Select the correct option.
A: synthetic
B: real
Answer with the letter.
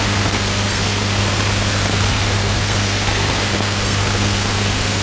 A